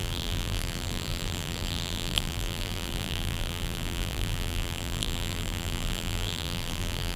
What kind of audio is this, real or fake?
fake